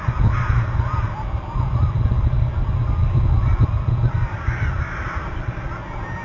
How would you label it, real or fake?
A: real